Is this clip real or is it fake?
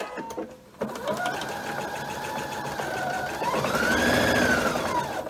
real